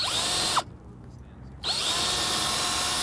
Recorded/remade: recorded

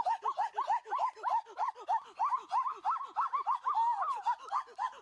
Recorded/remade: recorded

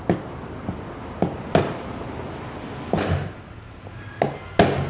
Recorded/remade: recorded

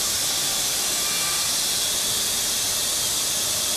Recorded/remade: recorded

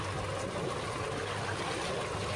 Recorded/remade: recorded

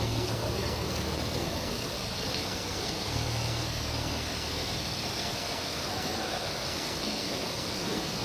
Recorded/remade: remade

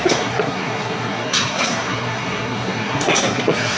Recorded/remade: remade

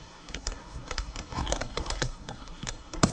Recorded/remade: remade